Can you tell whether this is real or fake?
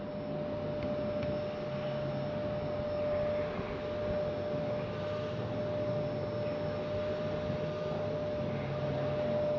real